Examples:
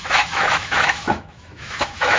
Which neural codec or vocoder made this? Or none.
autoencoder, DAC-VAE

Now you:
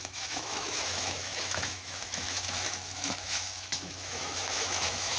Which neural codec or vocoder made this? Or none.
autoencoder, DAC-VAE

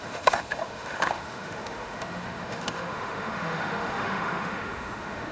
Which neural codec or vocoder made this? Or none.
autoencoder, DAC-VAE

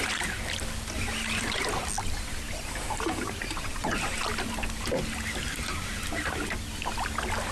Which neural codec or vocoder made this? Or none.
none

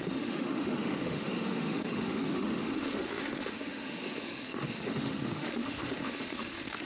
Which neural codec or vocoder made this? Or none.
autoencoder, DAC-VAE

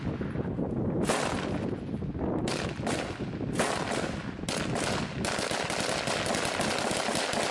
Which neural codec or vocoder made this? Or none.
none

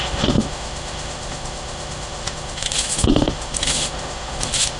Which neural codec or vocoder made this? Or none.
autoencoder, DAC-VAE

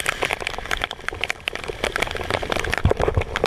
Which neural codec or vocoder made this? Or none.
none